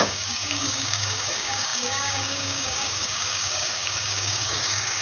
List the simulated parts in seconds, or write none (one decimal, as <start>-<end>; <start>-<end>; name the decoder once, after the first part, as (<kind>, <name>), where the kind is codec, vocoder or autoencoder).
0.0-5.0 (codec, DAC)